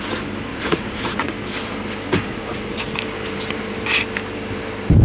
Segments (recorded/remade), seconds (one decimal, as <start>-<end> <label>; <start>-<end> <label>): 0.0-0.5 recorded; 0.5-1.3 remade; 1.3-2.3 recorded; 2.3-2.9 remade; 2.9-5.0 recorded